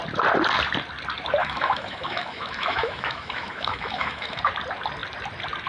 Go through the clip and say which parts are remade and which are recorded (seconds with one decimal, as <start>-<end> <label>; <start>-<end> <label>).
0.0-1.4 recorded; 1.4-4.4 remade; 4.4-5.7 recorded